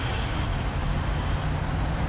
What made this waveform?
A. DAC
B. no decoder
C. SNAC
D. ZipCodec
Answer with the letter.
B